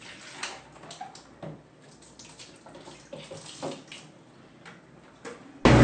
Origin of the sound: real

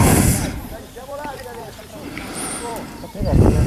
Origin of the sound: fake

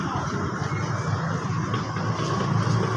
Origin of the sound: real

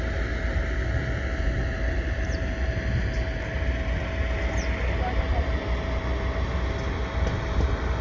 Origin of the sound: real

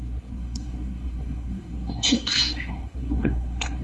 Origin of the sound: fake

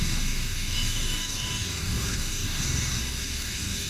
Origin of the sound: fake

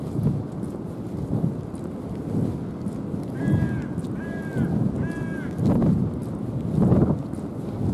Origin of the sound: real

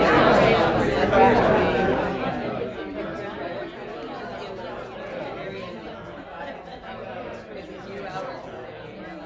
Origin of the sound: real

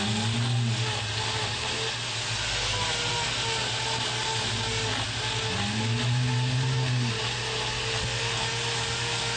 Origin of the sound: real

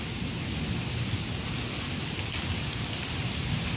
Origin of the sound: real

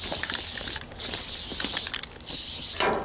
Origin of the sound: real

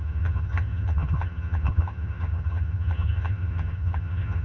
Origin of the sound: fake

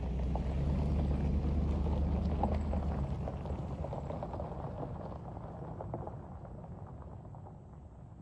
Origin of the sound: real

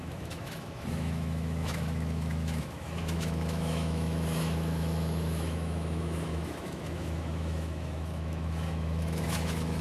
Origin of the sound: fake